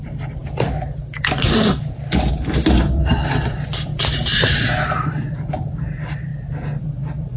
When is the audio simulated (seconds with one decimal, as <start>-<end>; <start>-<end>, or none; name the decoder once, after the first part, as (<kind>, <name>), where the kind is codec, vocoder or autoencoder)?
0.0-6.3 (vocoder, BigVGAN v2); 6.8-7.4